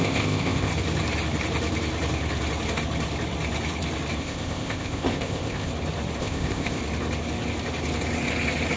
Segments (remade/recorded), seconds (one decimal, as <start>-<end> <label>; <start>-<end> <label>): 0.0-0.7 remade; 0.7-4.2 recorded; 4.2-5.7 remade; 5.7-6.2 recorded; 6.2-6.8 remade; 6.8-8.8 recorded